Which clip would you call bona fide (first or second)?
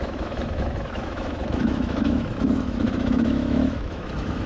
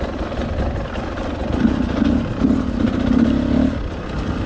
second